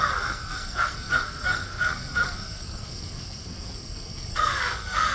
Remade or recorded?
remade